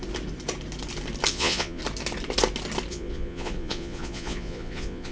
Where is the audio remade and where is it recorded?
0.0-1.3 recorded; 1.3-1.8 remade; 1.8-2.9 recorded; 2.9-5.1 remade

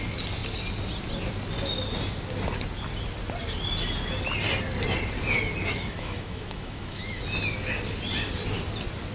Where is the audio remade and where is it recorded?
0.0-5.7 recorded; 5.7-7.2 remade; 7.2-9.1 recorded

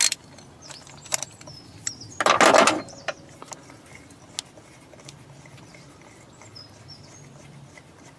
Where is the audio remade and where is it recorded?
0.0-8.2 recorded

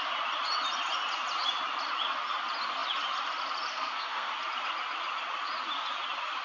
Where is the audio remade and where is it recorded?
0.0-3.7 recorded; 3.7-4.3 remade; 4.3-6.4 recorded